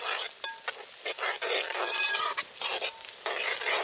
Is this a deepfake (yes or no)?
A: no